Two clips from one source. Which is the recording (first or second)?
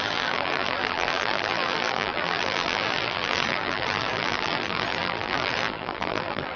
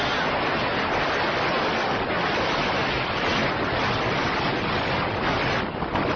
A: second